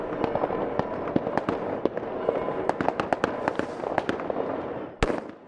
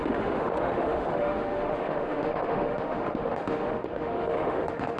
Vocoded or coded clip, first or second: second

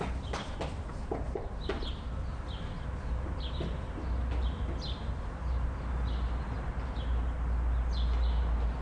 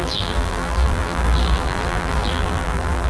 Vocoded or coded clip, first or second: second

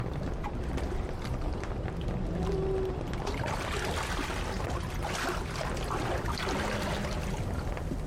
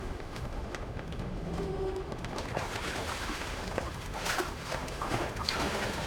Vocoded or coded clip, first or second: second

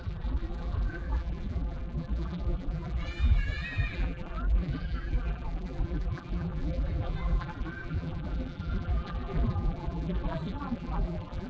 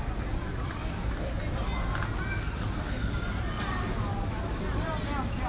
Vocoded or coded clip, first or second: first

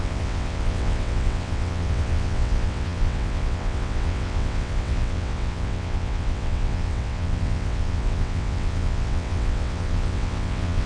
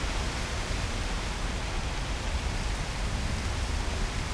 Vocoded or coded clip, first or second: first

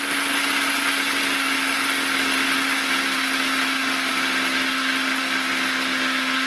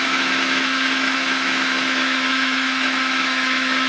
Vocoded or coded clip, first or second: second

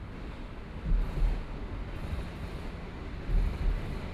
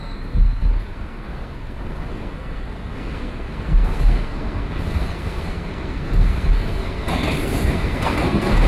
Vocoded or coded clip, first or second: second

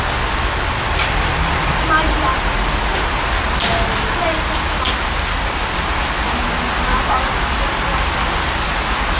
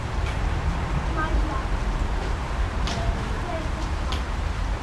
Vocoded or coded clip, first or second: second